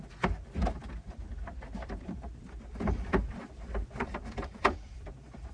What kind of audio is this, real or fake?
fake